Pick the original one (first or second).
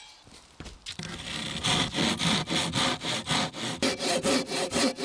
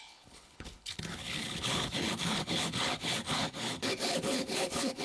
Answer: first